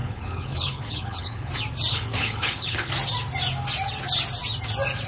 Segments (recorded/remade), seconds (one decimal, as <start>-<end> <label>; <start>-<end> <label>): 0.0-1.5 remade; 1.5-1.9 recorded; 1.9-2.9 remade; 2.9-5.1 recorded